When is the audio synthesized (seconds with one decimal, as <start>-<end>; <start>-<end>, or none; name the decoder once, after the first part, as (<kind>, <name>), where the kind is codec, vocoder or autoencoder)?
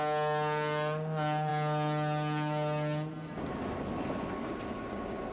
none